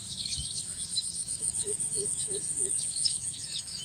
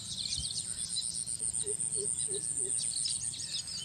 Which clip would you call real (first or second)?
second